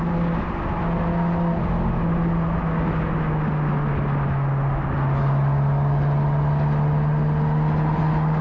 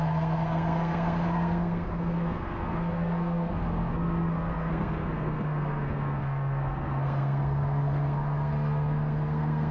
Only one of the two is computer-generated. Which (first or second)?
second